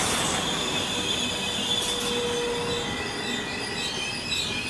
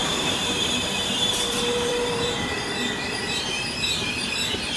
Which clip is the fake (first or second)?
second